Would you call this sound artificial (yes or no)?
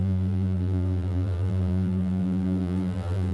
yes